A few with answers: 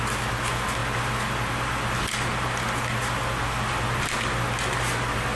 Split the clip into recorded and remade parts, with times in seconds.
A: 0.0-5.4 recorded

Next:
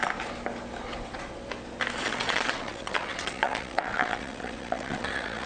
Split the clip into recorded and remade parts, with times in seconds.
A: 0.0-2.0 recorded; 2.0-5.5 remade

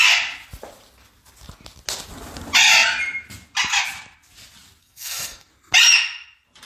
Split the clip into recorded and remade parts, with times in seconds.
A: 0.0-4.8 recorded; 4.8-5.5 remade; 5.5-6.6 recorded

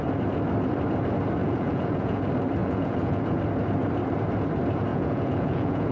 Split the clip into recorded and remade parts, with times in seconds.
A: 0.0-1.4 recorded; 1.4-2.2 remade; 2.2-2.6 recorded; 2.6-3.4 remade; 3.4-4.9 recorded; 4.9-5.9 remade

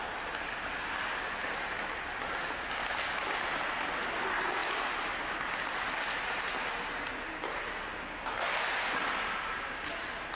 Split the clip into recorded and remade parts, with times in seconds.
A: 0.0-10.3 recorded

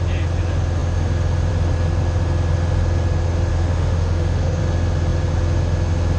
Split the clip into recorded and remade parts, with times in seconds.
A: 0.0-3.5 recorded; 3.5-4.6 remade; 4.6-6.2 recorded

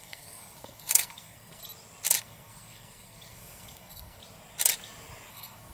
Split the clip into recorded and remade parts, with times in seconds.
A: 0.0-1.6 remade; 1.6-2.2 recorded; 2.2-4.2 remade; 4.2-5.3 recorded; 5.3-5.7 remade